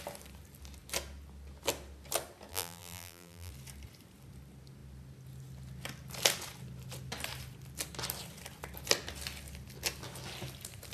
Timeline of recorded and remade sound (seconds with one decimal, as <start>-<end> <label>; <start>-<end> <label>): 0.0-2.5 recorded; 2.5-3.5 remade; 3.5-10.9 recorded